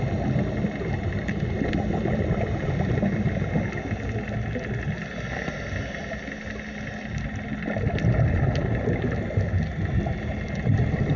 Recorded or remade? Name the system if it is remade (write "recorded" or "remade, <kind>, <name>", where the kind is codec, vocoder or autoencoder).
recorded